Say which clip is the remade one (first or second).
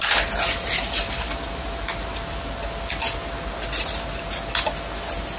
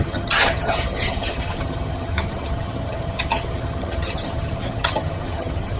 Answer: second